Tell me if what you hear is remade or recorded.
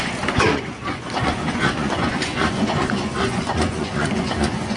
remade